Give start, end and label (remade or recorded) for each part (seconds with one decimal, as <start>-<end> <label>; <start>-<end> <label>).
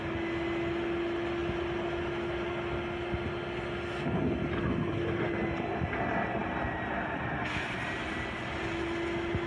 0.0-4.7 recorded; 4.7-5.3 remade; 5.3-6.4 recorded; 6.4-7.9 remade; 7.9-9.5 recorded